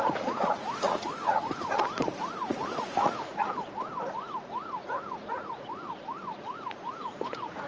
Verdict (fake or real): fake